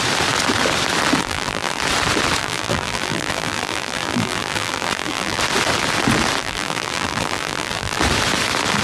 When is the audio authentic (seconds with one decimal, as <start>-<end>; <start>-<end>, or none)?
0.0-1.2; 1.8-2.4; 5.4-6.4; 8.0-8.8